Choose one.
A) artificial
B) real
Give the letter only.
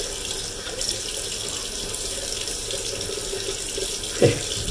B